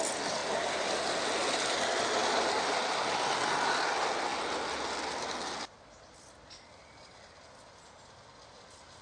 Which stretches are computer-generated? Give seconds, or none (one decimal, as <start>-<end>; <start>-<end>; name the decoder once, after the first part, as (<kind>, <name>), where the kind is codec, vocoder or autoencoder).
none